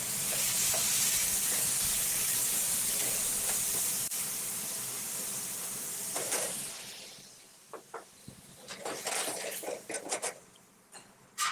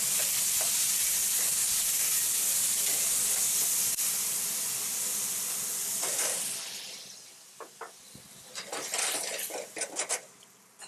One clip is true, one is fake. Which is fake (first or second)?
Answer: first